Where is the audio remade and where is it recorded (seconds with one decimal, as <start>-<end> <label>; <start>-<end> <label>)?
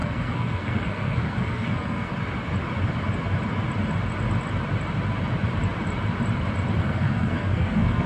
0.0-2.1 remade; 2.1-6.8 recorded; 6.8-8.1 remade